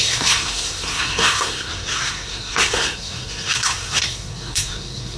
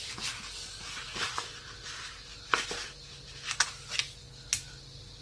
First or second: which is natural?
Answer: second